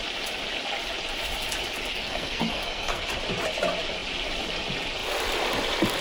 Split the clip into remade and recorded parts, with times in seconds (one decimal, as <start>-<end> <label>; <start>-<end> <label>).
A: 0.0-1.9 recorded; 1.9-3.2 remade; 3.2-6.0 recorded